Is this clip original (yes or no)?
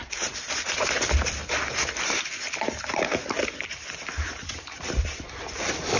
no